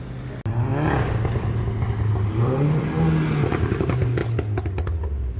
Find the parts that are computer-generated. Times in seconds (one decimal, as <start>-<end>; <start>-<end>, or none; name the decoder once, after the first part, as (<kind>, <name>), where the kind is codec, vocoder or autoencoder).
none